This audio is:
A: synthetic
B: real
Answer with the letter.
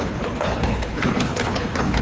A